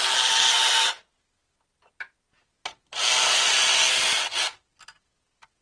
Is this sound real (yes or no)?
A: yes